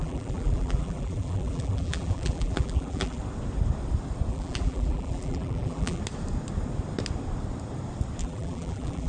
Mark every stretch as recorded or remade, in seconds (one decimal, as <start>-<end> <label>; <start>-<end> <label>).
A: 0.0-3.2 remade; 3.2-4.3 recorded; 4.3-6.0 remade; 6.0-8.2 recorded; 8.2-9.1 remade